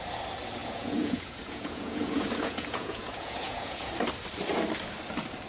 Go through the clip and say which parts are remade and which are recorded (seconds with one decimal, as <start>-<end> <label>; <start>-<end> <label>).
0.0-0.6 recorded; 0.6-3.9 remade; 3.9-5.5 recorded